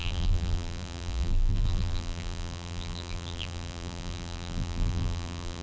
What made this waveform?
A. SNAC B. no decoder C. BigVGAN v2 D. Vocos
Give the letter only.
C